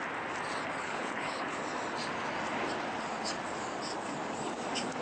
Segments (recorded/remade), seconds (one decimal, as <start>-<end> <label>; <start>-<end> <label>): 0.0-0.8 recorded; 0.8-1.6 remade; 1.6-5.0 recorded